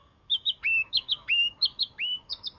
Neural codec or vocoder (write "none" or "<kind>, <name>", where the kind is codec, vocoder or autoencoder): codec, DAC